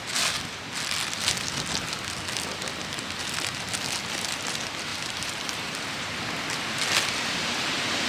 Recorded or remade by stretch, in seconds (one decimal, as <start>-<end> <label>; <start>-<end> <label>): 0.0-4.9 recorded; 4.9-6.2 remade; 6.2-8.1 recorded